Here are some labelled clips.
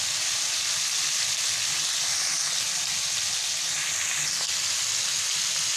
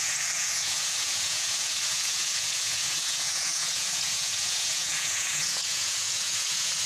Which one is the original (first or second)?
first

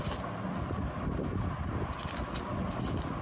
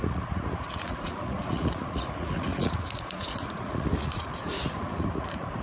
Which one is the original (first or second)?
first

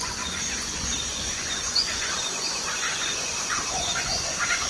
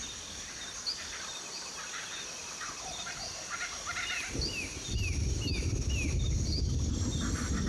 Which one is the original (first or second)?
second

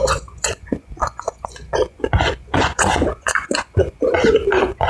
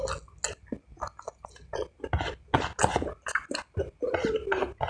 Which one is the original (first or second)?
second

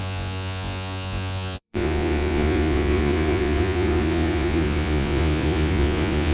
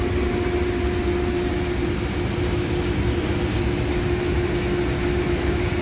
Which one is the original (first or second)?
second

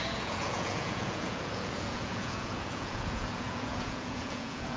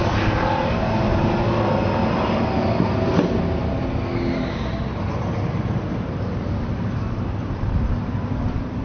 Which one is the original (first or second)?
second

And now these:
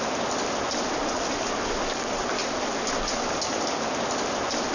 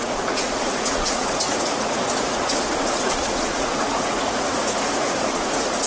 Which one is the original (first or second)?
first